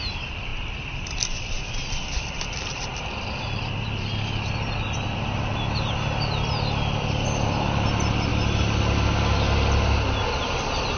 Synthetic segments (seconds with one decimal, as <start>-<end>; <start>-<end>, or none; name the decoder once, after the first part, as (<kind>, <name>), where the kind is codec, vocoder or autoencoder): 0.0-0.5 (vocoder, BigVGAN v2); 1.9-8.3; 10.4-11.0